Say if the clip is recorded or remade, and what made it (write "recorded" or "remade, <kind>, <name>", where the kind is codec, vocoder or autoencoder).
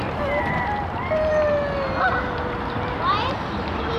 recorded